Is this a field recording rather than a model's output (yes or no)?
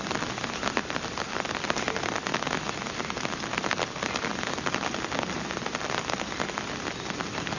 yes